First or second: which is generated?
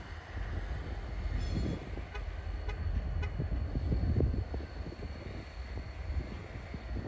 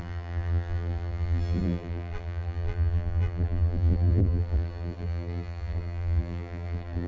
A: second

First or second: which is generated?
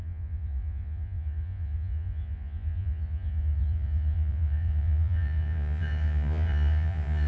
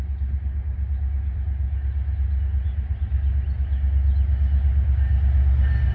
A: first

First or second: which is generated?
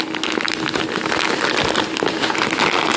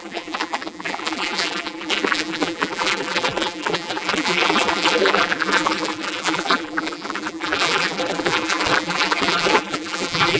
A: second